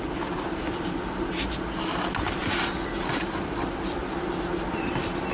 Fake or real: real